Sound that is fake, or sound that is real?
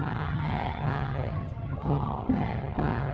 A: fake